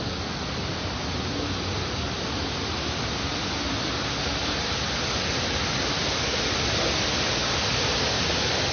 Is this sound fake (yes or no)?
no